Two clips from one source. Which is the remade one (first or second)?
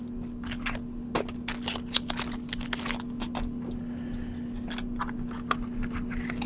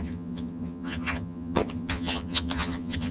second